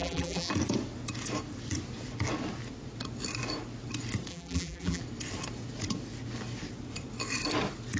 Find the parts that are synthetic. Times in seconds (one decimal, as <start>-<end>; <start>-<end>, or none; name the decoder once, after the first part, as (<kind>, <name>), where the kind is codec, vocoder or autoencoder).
0.0-0.5 (vocoder, BigVGAN v2); 4.3-5.0